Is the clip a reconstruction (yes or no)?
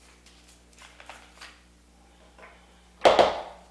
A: no